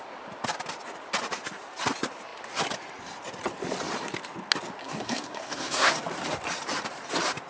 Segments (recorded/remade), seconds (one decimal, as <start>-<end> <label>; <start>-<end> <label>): 0.0-4.8 recorded; 4.8-5.9 remade; 5.9-7.5 recorded